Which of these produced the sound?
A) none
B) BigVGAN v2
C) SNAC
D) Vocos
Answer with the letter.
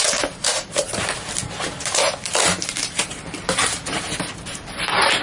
B